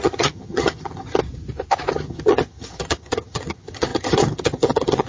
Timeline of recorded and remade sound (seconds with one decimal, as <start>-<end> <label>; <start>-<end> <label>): 0.0-1.2 remade; 1.2-1.9 recorded; 1.9-5.1 remade